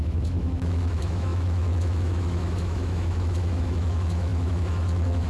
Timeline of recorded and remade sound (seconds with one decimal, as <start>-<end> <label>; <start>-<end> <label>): 0.0-5.3 remade